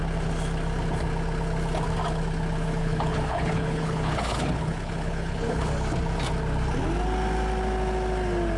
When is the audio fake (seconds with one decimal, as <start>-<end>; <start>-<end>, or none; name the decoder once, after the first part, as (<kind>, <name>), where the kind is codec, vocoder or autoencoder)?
2.8-5.7 (codec, HILCodec)

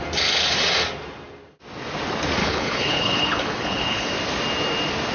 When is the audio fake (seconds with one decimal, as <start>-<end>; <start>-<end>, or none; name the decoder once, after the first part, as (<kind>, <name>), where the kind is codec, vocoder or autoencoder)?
2.4-4.1 (codec, HILCodec)

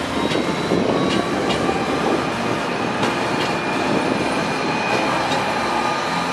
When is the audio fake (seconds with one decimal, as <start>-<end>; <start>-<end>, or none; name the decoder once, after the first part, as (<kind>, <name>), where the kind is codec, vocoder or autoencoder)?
none

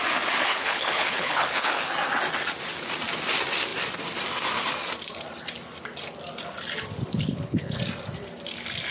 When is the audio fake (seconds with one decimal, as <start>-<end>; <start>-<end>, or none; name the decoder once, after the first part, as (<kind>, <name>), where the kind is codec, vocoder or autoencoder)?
0.4-1.9 (codec, HILCodec); 7.1-7.8

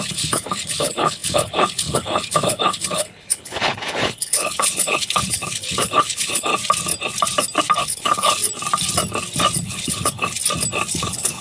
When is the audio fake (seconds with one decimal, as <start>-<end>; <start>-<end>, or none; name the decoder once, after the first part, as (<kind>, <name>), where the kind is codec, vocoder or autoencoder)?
0.0-6.5 (codec, HILCodec); 7.8-8.4; 9.6-10.4; 10.9-11.4

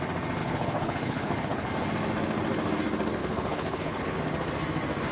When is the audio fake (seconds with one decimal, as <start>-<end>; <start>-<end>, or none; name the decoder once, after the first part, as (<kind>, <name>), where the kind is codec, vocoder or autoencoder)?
0.4-1.7 (codec, HILCodec); 3.2-4.2

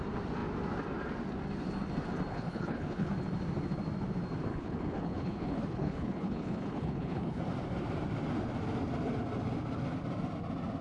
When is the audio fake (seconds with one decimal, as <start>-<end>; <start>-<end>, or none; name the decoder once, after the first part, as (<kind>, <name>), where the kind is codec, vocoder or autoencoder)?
2.3-3.1 (codec, HILCodec); 4.5-7.4